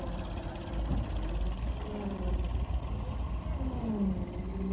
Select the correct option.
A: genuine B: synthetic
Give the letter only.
A